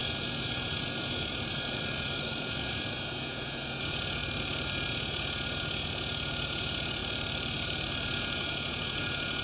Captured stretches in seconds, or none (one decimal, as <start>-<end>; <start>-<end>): 4.2-4.9; 7.0-8.1